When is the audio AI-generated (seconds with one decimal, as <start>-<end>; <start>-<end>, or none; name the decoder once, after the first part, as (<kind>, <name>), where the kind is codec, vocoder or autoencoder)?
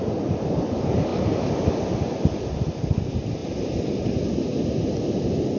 none